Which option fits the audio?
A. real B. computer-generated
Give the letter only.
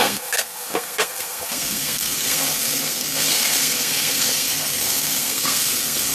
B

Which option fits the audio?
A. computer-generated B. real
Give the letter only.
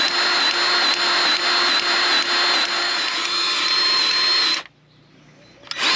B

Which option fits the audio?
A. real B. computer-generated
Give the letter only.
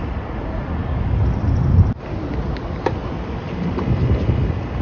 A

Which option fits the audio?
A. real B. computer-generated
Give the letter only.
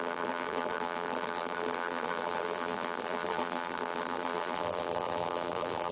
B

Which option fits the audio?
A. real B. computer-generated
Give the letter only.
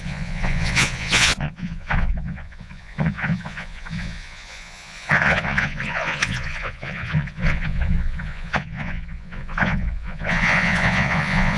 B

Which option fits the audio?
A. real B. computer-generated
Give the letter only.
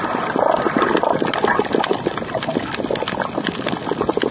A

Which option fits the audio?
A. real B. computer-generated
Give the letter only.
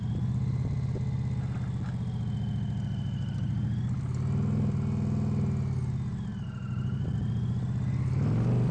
A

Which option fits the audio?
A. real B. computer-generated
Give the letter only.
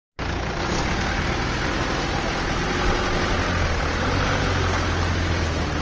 A